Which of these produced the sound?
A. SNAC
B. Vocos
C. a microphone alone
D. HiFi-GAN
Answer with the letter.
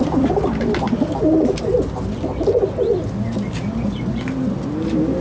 C